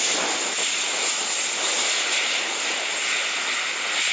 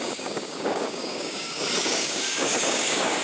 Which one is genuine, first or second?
first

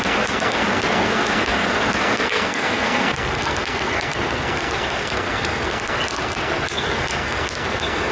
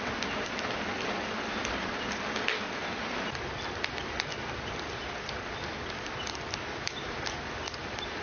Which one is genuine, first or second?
second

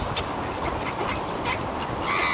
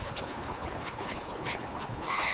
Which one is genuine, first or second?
first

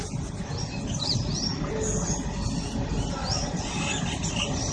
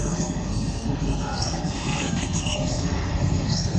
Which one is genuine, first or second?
first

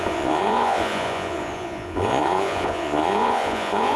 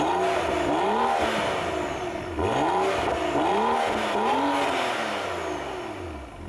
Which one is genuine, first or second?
second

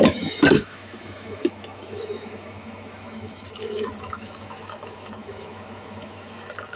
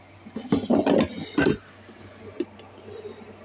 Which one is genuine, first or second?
second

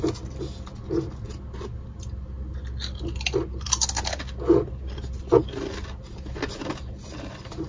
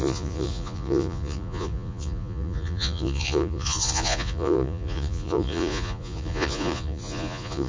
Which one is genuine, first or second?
first